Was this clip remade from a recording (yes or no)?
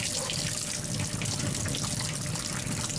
no